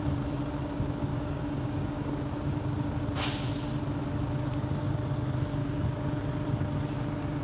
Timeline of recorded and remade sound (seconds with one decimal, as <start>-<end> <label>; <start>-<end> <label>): 0.0-1.1 recorded; 1.1-2.1 remade; 2.1-5.6 recorded; 5.6-6.1 remade; 6.1-7.4 recorded